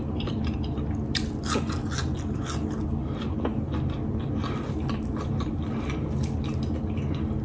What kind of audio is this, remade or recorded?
recorded